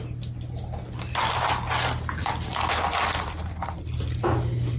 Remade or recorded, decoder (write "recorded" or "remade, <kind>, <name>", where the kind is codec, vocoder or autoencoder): recorded